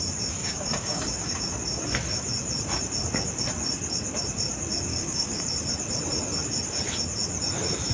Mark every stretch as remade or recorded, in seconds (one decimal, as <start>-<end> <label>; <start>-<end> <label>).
0.0-0.4 recorded; 0.4-1.4 remade; 1.4-4.9 recorded; 4.9-5.4 remade; 5.4-7.9 recorded